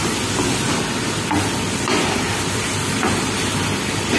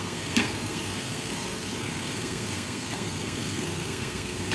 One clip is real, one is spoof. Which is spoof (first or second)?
second